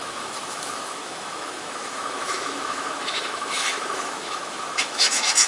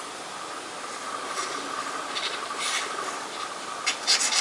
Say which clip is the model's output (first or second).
first